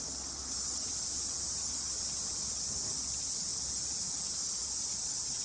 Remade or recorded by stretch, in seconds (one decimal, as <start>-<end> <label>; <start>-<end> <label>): 0.0-3.5 recorded; 3.5-4.6 remade; 4.6-5.4 recorded

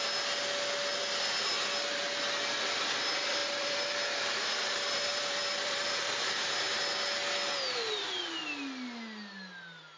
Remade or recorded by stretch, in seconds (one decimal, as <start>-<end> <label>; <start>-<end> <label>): 0.0-3.4 recorded; 3.4-6.8 remade; 6.8-10.0 recorded